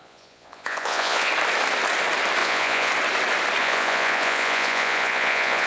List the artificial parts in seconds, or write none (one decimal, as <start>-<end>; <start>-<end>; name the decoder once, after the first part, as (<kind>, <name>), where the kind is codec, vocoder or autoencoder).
0.0-1.3 (vocoder, Vocos); 2.4-2.9; 3.6-5.7